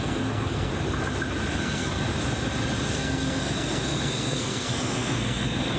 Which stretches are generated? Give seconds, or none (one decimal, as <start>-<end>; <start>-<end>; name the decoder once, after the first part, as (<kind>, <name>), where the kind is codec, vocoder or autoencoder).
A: 0.0-0.7 (codec, SNAC); 1.5-2.1; 2.9-5.8